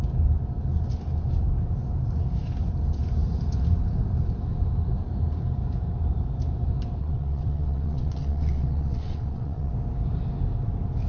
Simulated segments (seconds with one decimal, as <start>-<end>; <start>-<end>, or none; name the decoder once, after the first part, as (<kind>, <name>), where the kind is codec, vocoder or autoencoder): 7.0-9.7 (vocoder, WaveNeXt)